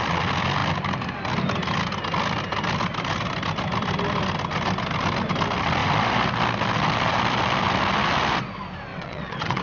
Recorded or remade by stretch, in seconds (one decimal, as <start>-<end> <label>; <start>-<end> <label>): 0.0-8.9 recorded; 8.9-9.6 remade

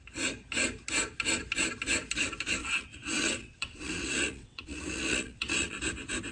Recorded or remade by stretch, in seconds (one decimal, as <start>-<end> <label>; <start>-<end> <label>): 0.0-2.6 recorded; 2.6-5.8 remade; 5.8-6.3 recorded

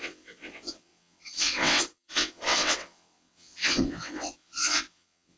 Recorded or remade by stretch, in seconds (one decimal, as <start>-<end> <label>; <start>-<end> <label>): 0.0-5.4 remade

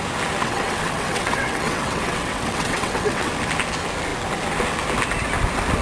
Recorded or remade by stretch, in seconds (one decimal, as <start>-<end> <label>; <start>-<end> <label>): 0.0-0.4 recorded; 0.4-3.3 remade; 3.3-5.8 recorded